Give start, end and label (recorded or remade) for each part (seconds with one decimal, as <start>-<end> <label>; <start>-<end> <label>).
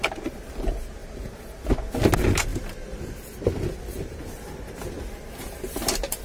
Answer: 0.0-2.5 recorded; 2.5-6.2 remade